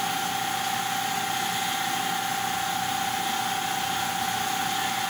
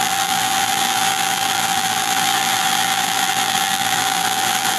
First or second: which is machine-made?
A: second